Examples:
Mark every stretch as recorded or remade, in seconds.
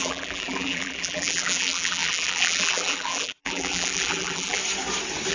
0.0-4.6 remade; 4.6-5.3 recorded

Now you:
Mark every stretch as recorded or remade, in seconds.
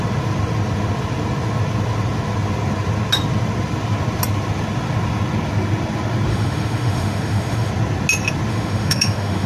0.0-6.3 recorded; 6.3-7.7 remade; 7.7-8.5 recorded; 8.5-9.5 remade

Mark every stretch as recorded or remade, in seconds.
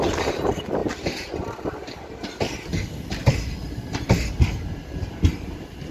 0.0-5.9 recorded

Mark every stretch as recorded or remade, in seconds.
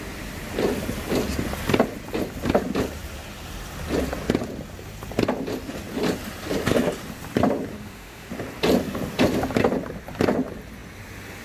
0.0-7.7 recorded; 7.7-8.3 remade; 8.3-11.4 recorded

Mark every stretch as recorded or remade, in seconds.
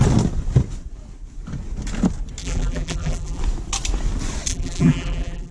0.0-2.4 recorded; 2.4-3.4 remade; 3.4-4.5 recorded; 4.5-5.5 remade